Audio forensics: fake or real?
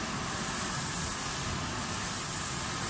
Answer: real